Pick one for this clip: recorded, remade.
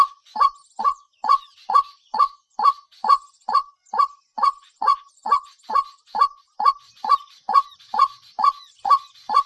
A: remade